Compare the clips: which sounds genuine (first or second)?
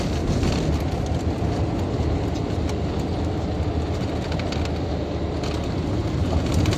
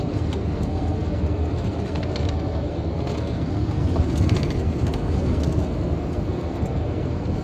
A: first